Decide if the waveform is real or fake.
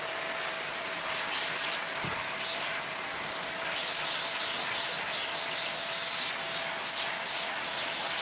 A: real